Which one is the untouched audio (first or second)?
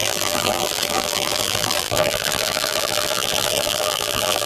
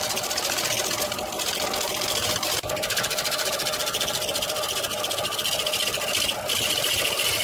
second